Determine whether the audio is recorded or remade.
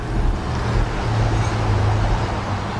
recorded